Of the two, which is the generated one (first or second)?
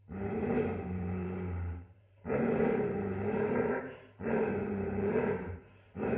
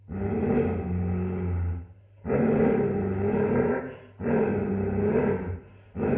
first